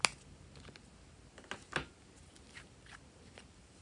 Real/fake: real